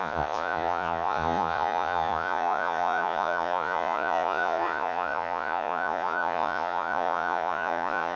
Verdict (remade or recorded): remade